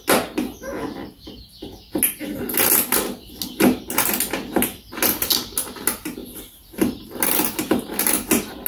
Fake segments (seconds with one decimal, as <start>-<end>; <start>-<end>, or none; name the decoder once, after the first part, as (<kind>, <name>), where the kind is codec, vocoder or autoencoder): none